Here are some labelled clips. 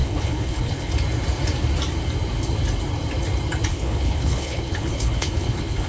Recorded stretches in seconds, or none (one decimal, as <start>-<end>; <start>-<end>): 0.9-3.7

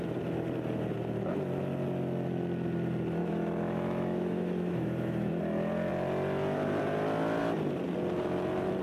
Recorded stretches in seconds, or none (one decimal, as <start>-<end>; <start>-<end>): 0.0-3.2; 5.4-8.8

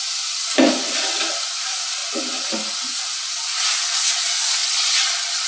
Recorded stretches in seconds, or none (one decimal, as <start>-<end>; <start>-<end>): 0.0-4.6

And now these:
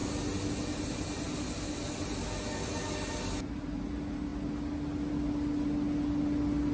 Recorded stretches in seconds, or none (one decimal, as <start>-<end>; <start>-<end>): 0.0-6.7